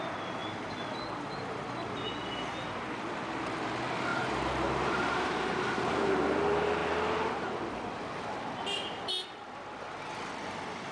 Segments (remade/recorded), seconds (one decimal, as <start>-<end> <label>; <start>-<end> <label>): 0.0-0.4 recorded; 0.4-1.0 remade; 1.0-4.1 recorded; 4.1-5.6 remade; 5.6-10.9 recorded